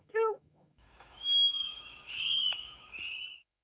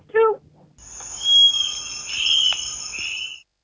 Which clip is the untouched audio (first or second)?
second